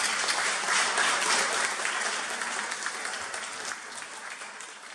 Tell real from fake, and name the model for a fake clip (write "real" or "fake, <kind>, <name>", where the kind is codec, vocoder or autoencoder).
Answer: real